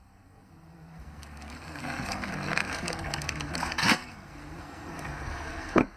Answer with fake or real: fake